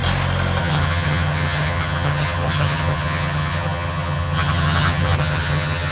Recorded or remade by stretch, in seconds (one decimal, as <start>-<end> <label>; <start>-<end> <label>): 0.0-0.6 recorded; 0.6-5.9 remade